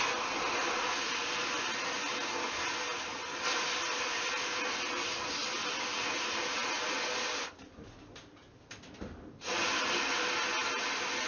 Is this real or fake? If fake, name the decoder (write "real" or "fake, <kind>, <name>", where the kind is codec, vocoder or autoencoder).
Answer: real